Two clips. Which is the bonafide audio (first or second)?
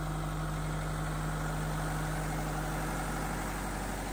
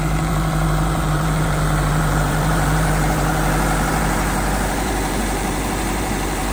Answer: first